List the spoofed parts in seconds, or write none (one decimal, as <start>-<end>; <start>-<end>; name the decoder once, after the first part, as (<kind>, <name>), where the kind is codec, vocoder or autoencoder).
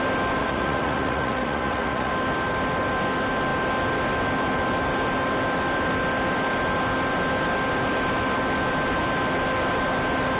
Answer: 0.4-2.1 (vocoder, Vocos)